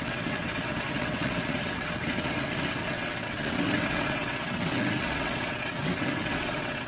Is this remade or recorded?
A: remade